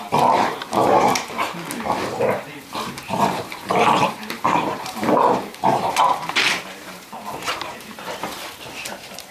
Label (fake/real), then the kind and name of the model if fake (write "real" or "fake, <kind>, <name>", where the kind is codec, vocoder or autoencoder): fake, vocoder, BigVGAN v2